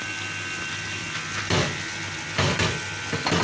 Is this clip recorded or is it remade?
recorded